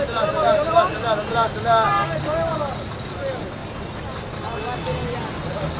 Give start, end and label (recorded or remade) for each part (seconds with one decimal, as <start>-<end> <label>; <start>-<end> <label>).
0.0-5.8 recorded